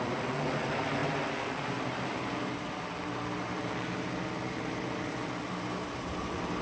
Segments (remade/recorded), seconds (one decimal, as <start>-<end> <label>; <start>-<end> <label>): 0.0-1.0 remade; 1.0-5.0 recorded; 5.0-6.6 remade